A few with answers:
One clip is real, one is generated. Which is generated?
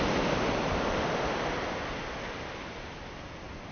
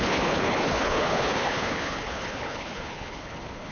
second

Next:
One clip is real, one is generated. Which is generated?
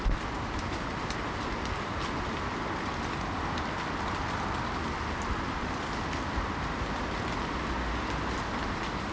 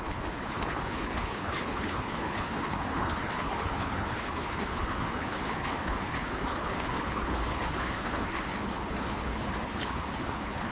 second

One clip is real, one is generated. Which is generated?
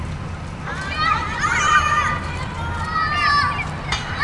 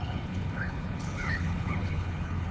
second